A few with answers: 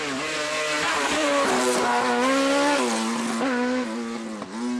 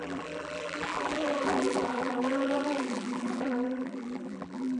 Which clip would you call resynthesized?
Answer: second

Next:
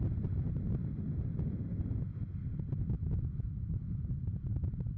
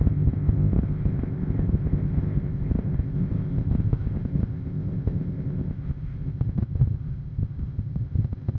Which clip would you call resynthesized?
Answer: second